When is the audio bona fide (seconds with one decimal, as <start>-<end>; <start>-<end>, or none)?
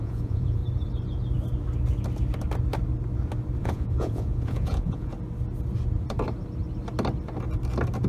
0.6-3.6; 5.1-8.1